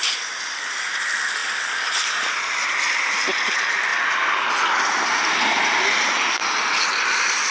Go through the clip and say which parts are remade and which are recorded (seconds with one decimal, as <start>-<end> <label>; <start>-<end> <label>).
0.0-7.5 recorded